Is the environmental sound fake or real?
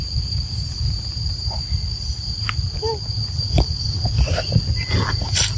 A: fake